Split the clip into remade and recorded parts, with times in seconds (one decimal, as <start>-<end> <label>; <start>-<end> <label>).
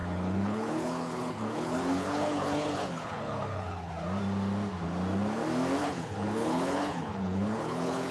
0.0-3.9 remade; 3.9-5.8 recorded; 5.8-8.1 remade